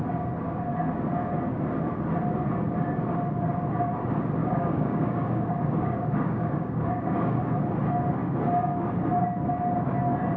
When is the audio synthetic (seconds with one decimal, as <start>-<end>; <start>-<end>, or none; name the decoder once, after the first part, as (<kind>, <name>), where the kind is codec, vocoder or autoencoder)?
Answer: 4.4-7.4 (codec, DAC)